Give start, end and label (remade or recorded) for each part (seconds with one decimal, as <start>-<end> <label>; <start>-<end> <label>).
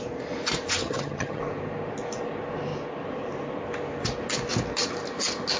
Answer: 0.0-0.8 recorded; 0.8-1.4 remade; 1.4-5.6 recorded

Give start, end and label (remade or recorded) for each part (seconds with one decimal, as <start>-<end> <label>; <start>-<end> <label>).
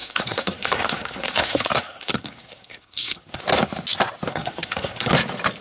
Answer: 0.0-3.4 remade; 3.4-4.3 recorded; 4.3-5.1 remade; 5.1-5.6 recorded